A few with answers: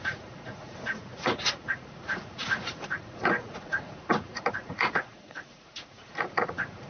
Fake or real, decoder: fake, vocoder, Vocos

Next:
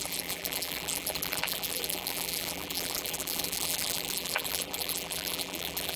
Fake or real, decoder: fake, vocoder, BigVGAN v2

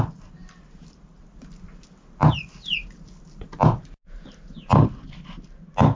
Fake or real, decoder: real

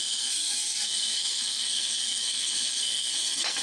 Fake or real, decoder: fake, codec, SNAC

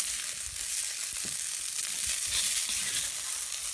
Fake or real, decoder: real